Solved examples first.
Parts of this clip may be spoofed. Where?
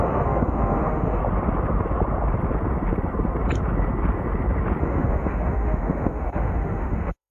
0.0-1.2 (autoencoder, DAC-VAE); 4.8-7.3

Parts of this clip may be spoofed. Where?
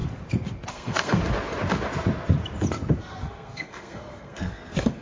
0.7-1.2 (codec, SNAC); 3.0-5.0